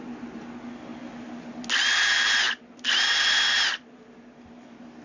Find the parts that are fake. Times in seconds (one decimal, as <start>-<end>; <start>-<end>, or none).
none